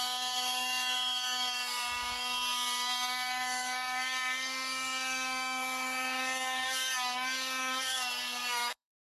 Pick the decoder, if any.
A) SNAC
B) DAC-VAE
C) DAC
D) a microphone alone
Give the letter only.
C